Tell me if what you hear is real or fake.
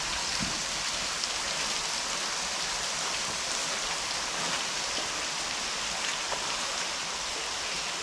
real